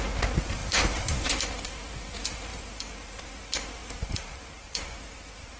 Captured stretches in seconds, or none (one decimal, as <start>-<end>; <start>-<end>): 0.0-0.6; 1.3-2.5; 3.2-3.8; 4.8-5.6